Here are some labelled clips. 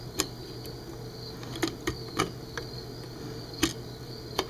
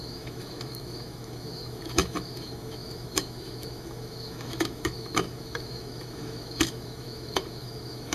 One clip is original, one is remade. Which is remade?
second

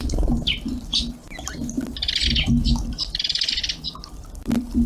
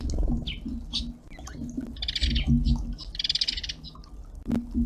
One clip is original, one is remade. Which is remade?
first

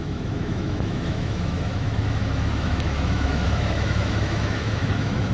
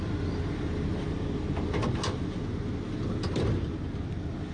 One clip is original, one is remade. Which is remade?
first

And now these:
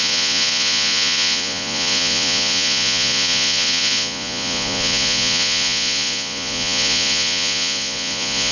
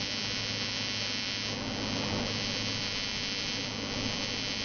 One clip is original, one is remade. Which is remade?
first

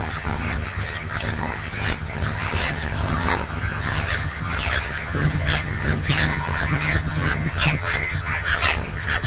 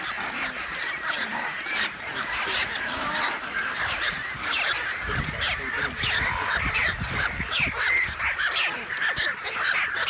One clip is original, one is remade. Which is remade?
first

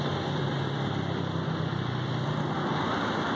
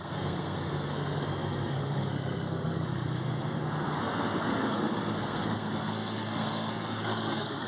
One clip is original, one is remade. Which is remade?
second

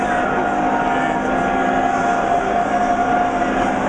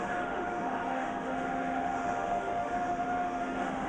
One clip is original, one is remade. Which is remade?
second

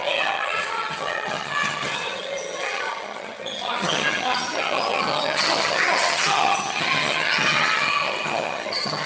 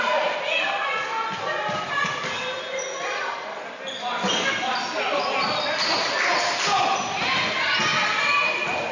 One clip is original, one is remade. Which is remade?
first